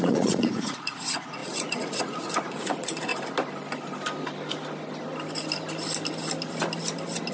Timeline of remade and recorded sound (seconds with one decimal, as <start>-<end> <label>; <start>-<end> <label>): 0.0-3.1 remade; 3.1-7.3 recorded